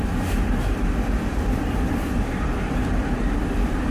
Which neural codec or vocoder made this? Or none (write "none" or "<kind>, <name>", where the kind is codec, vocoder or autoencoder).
vocoder, BigVGAN v2